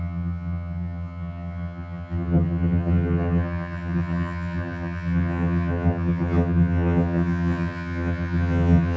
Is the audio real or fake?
fake